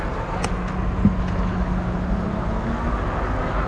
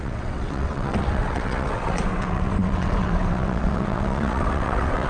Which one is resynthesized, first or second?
second